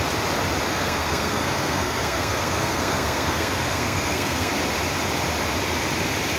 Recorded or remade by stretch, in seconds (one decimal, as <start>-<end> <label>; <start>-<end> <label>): 0.0-0.7 recorded; 0.7-4.5 remade; 4.5-6.4 recorded